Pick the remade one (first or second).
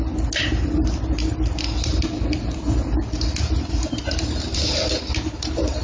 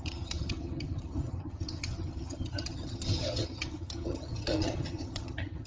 second